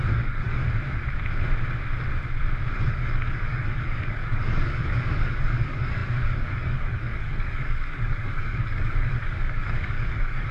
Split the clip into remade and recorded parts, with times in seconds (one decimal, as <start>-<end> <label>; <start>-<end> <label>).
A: 0.0-0.6 remade; 0.6-2.8 recorded; 2.8-10.5 remade